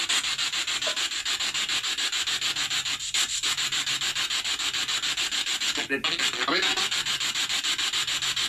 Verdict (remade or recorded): recorded